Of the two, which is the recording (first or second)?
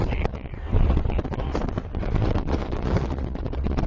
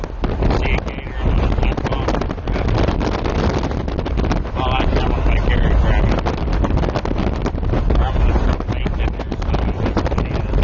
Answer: second